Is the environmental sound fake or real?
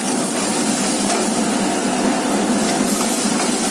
real